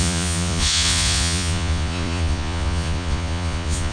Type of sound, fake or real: fake